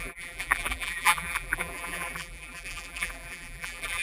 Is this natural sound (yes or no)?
no